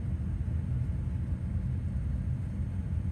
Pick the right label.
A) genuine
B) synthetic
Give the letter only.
A